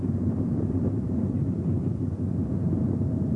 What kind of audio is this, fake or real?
fake